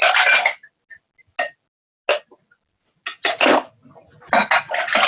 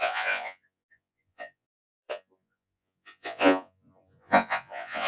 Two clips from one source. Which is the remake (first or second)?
second